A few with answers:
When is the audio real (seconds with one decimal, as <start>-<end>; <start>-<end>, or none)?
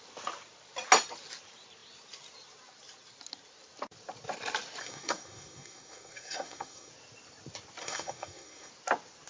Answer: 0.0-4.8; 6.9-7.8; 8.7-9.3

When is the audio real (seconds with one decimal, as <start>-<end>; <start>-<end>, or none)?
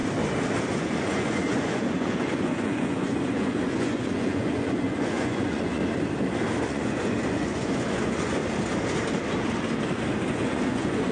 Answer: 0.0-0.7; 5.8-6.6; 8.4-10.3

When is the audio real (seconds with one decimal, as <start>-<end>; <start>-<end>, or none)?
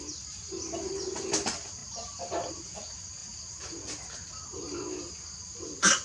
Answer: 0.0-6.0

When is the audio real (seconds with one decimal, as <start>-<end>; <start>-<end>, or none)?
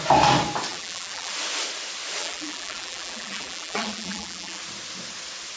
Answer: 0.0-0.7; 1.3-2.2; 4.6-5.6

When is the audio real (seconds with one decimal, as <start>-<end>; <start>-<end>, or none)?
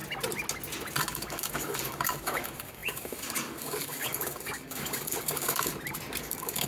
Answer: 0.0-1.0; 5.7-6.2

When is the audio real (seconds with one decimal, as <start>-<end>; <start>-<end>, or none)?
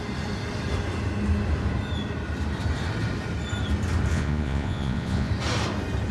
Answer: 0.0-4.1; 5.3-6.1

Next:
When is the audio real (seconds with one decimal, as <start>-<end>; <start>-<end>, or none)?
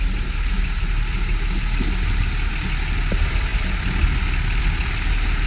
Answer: 0.0-5.5